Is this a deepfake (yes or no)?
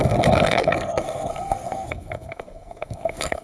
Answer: yes